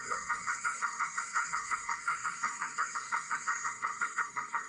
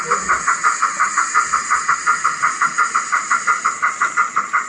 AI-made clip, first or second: first